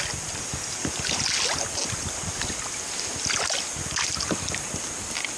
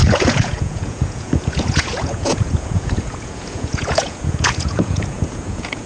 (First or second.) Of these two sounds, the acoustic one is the first